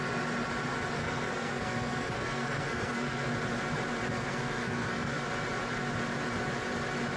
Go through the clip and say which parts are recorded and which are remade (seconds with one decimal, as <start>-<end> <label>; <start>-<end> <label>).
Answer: 0.0-1.0 recorded; 1.0-3.3 remade; 3.3-4.1 recorded; 4.1-5.2 remade; 5.2-7.2 recorded